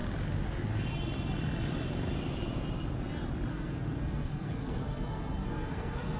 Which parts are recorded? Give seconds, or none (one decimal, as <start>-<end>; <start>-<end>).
0.0-3.5